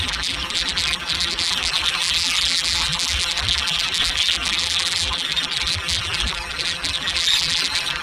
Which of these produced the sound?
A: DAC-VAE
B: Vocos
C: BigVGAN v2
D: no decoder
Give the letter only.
C